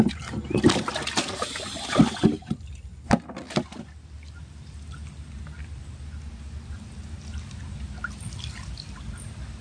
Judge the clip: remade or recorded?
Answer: recorded